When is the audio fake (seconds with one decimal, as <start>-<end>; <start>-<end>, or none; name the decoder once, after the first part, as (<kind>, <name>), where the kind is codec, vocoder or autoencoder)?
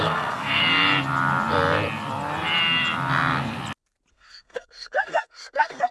0.0-0.6 (codec, SNAC); 4.1-5.9